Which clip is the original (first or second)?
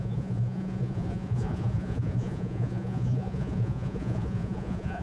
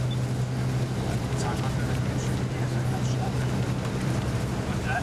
second